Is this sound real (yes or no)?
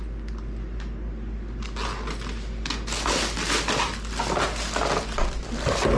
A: yes